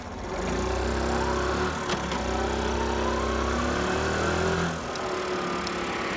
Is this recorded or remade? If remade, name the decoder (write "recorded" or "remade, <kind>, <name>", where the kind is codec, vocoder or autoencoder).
recorded